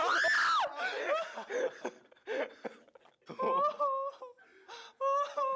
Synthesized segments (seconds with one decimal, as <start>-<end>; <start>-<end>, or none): none